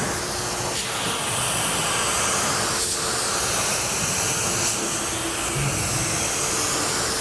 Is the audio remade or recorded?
recorded